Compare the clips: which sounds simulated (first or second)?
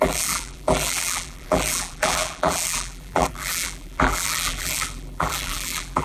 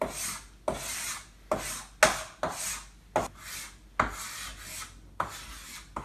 first